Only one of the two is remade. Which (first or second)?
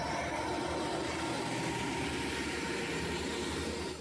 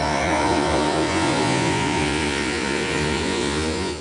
second